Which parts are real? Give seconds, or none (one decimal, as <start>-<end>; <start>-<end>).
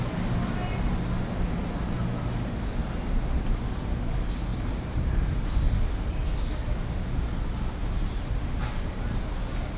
0.0-2.8; 3.4-4.5; 5.9-7.8; 9.2-9.8